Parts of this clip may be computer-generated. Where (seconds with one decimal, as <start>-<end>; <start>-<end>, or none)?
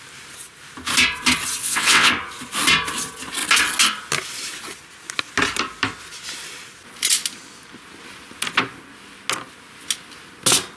1.6-2.1